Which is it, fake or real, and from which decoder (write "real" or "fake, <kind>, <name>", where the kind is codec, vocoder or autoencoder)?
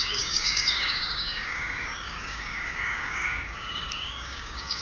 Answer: fake, codec, DAC